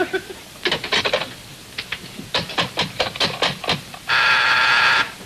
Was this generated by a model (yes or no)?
yes